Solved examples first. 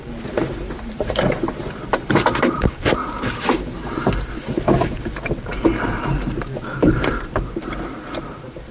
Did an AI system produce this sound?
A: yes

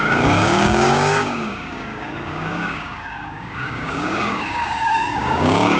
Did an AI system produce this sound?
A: yes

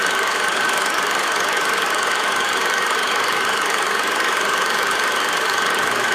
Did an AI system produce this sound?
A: yes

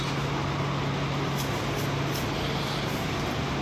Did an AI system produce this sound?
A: no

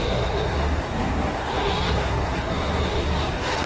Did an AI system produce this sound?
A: yes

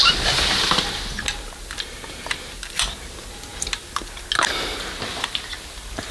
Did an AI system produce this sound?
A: no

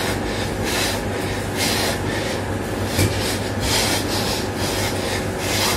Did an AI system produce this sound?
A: no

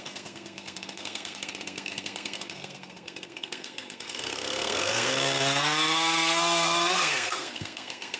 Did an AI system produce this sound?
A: yes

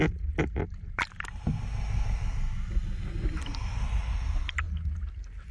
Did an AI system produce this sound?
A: no